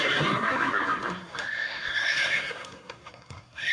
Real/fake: fake